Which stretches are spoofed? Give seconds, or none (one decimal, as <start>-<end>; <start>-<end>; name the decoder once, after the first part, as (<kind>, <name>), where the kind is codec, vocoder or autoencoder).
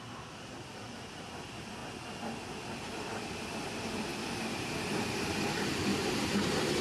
0.0-1.8 (vocoder, BigVGAN v2); 2.7-4.1; 6.1-6.8